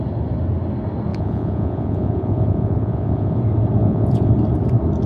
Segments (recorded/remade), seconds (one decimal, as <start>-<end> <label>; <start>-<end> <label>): 0.0-1.1 recorded; 1.1-3.4 remade; 3.4-3.8 recorded; 3.8-4.3 remade; 4.3-5.1 recorded

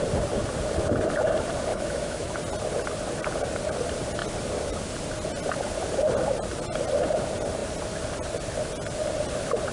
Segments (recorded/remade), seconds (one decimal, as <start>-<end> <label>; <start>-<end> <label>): 0.0-1.7 recorded; 1.7-2.4 remade; 2.4-9.7 recorded

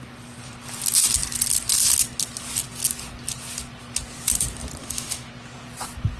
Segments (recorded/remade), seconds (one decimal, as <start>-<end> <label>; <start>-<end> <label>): 0.0-4.8 recorded; 4.8-5.3 remade; 5.3-6.2 recorded

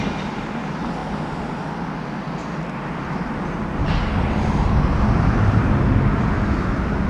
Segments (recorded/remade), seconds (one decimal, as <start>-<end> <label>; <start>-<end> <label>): 0.0-1.0 recorded; 1.0-1.7 remade; 1.7-2.4 recorded; 2.4-3.2 remade; 3.2-7.1 recorded

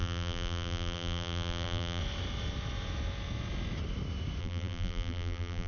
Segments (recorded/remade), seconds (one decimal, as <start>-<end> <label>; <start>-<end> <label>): 0.0-2.0 remade; 2.0-4.4 recorded; 4.4-5.7 remade

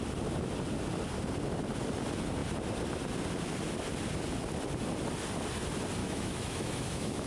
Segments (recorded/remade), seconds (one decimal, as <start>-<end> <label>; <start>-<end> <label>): 0.0-6.0 recorded; 6.0-7.3 remade